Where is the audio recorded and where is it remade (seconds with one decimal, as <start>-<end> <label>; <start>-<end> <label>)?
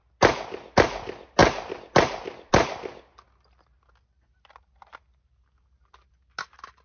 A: 0.0-6.8 recorded